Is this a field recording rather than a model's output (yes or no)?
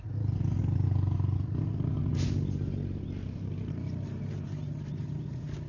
yes